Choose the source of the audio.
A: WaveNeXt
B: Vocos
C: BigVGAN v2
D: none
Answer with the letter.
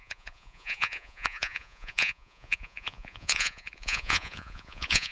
B